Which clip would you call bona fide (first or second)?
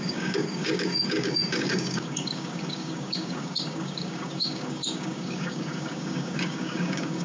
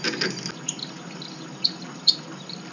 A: second